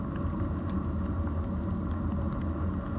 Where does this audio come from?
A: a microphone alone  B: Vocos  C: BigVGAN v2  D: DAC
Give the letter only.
A